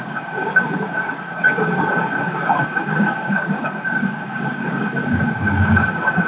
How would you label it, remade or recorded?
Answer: remade